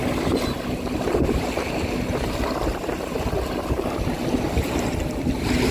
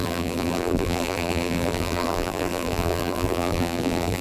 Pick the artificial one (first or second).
second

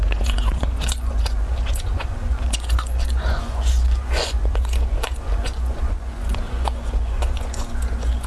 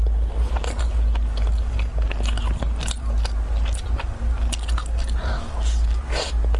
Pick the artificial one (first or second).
first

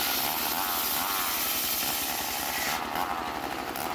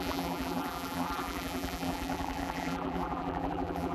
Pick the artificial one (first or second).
second